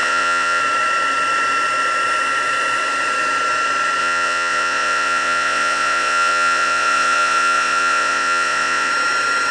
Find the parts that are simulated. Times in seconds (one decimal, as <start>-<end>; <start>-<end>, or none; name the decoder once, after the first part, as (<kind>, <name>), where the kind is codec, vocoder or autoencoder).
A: 0.0-0.6 (vocoder, Vocos); 4.0-8.9